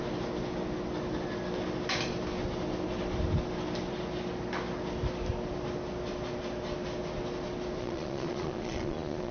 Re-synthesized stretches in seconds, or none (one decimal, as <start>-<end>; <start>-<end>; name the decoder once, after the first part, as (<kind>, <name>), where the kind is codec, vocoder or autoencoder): 7.8-9.3 (vocoder, Vocos)